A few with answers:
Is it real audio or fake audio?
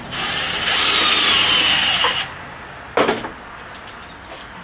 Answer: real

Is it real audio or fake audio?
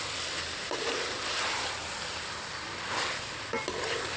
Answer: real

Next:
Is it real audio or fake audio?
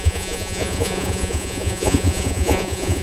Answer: fake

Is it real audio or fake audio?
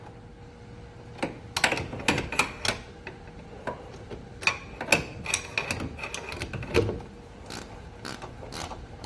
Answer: real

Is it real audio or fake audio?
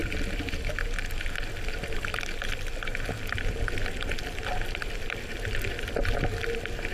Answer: real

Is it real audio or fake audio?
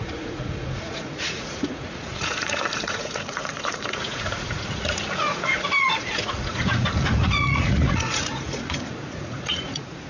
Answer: fake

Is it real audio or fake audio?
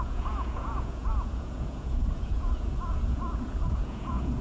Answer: fake